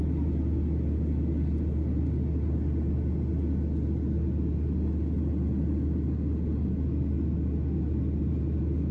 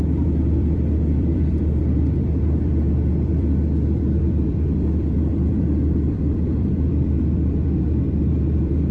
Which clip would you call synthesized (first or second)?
second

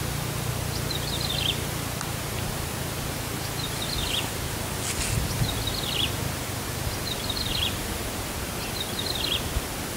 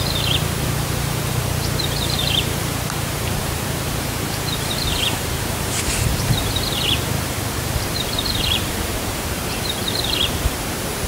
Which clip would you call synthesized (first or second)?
second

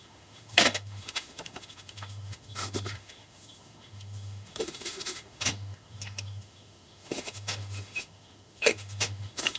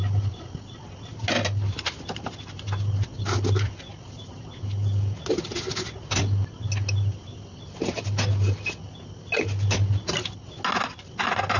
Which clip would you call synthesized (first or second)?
first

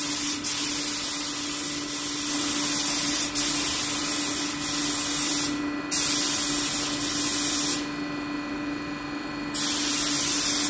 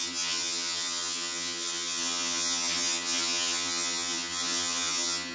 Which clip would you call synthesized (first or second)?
second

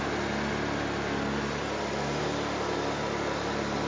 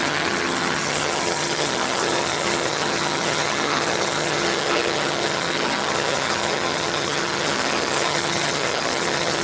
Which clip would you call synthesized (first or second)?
second